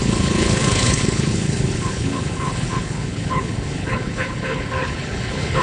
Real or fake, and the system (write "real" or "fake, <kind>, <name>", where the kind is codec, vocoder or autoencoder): fake, codec, HILCodec